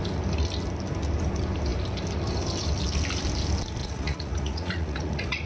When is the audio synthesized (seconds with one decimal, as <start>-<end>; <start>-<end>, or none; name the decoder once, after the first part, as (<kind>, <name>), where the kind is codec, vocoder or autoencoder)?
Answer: 3.8-5.5 (vocoder, Vocos)